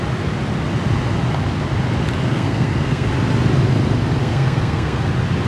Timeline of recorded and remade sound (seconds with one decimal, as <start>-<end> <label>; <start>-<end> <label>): 0.0-2.3 recorded; 2.3-3.1 remade; 3.1-4.2 recorded; 4.2-5.0 remade; 5.0-5.5 recorded